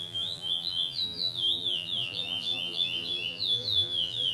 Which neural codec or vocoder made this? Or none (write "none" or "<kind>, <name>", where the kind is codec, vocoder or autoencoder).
vocoder, BigVGAN v2